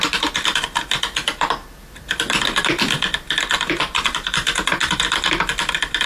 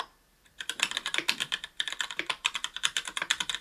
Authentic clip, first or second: first